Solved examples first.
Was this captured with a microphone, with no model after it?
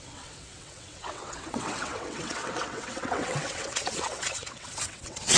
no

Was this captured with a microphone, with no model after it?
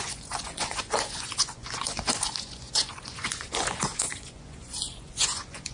no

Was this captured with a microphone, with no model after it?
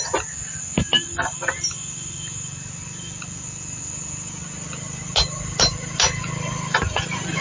yes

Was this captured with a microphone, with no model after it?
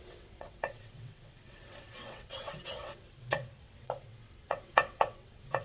no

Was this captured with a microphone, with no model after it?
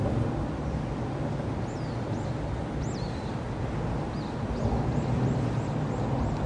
yes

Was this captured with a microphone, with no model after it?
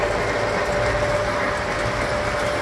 yes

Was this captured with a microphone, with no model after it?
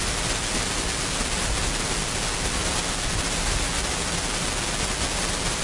yes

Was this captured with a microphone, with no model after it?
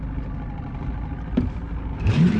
yes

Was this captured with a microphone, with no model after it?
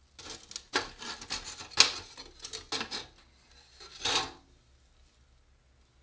yes